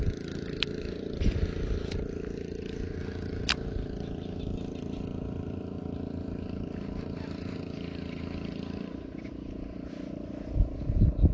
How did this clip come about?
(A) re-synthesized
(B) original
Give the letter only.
B